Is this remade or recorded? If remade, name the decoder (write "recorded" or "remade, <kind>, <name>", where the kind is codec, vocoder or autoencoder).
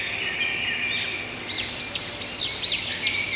recorded